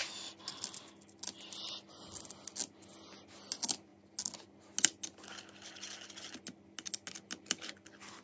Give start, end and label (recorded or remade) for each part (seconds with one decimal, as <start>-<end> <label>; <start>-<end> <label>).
0.0-8.2 recorded

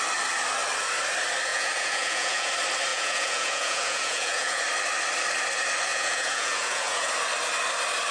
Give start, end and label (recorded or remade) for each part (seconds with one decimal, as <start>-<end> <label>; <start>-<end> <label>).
0.0-1.5 recorded; 1.5-2.5 remade; 2.5-2.9 recorded; 2.9-4.6 remade; 4.6-5.9 recorded; 5.9-7.1 remade; 7.1-8.1 recorded

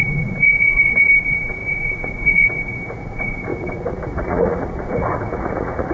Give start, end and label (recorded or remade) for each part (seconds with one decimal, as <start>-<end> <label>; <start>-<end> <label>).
0.0-5.9 remade

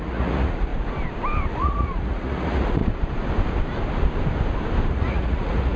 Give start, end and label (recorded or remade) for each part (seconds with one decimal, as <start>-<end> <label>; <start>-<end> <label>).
0.0-0.7 remade; 0.7-1.5 recorded; 1.5-2.8 remade; 2.8-4.9 recorded; 4.9-5.8 remade

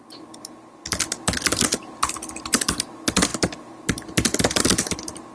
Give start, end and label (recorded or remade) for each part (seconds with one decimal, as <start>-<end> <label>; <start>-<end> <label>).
0.0-5.3 recorded

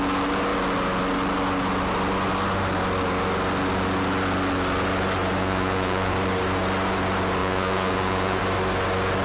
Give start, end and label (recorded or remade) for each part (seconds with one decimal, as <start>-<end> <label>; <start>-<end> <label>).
0.0-5.4 recorded; 5.4-6.1 remade; 6.1-7.4 recorded; 7.4-8.4 remade; 8.4-9.2 recorded